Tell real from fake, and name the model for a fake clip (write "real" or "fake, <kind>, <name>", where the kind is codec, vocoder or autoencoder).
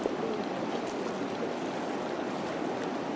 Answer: real